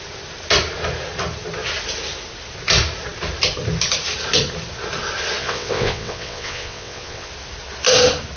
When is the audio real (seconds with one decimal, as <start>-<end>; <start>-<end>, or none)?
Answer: 0.0-5.4; 7.3-8.4